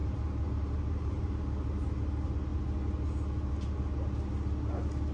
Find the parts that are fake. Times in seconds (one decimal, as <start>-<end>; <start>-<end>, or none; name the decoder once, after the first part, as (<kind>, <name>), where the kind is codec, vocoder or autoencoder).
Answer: 0.0-1.4 (vocoder, BigVGAN v2)